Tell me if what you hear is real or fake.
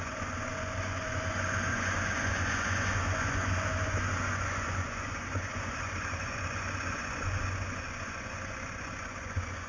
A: fake